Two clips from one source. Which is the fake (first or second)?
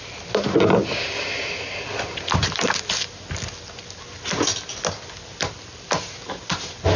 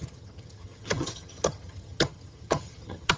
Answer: second